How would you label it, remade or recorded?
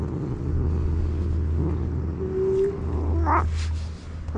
recorded